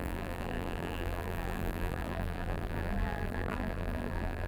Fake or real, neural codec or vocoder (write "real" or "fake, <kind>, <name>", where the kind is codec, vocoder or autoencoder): fake, vocoder, BigVGAN v2